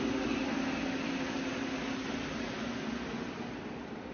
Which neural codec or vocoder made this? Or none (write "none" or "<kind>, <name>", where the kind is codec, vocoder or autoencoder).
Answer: none